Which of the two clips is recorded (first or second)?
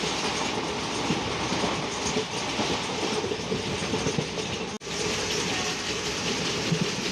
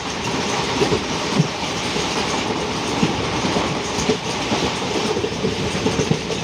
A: first